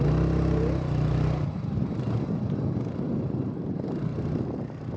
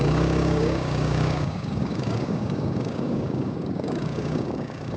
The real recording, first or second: first